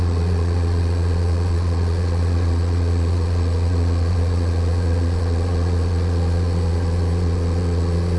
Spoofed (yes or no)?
yes